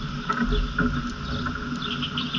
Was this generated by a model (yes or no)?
no